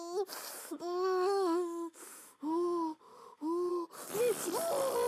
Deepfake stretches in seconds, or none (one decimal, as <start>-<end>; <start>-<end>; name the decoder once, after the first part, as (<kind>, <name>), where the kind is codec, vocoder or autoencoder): 0.6-3.7 (autoencoder, DAC-VAE)